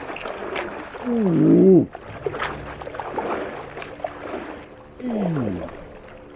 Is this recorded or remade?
recorded